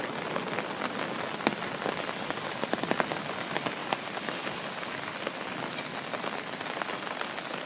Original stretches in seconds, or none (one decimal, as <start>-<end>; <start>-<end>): 0.0-7.7